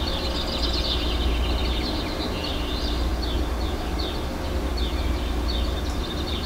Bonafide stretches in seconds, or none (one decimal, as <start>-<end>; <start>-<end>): 0.0-6.5